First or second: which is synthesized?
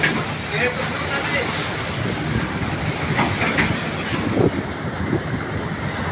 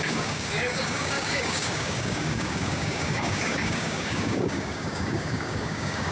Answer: second